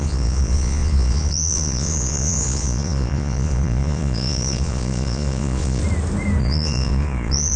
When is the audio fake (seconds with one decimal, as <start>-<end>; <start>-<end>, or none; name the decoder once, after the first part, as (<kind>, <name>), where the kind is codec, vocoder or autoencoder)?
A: 0.0-5.8 (vocoder, Vocos); 6.4-7.6